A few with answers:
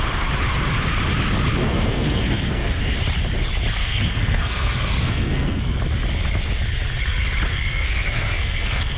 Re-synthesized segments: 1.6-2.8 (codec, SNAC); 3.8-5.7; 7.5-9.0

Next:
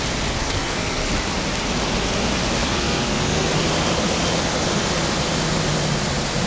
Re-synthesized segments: 0.4-1.1 (codec, SNAC); 2.6-3.5